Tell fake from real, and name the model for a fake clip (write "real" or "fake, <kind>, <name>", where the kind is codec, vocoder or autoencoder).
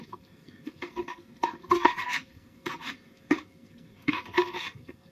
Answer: fake, codec, SNAC